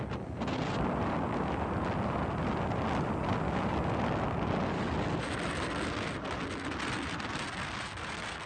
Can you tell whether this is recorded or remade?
recorded